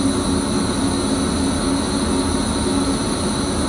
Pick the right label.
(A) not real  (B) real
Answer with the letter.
B